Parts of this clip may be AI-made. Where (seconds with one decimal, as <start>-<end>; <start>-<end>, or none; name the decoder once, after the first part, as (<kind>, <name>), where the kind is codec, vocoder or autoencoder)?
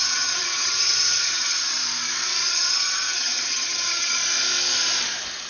0.0-1.7 (vocoder, HiFi-GAN); 2.5-4.2